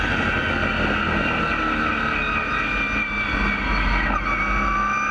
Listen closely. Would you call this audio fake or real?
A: real